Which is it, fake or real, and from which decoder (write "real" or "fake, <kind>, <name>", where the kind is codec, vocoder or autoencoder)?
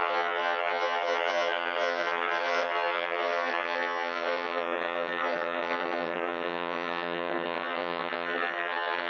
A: fake, vocoder, HiFi-GAN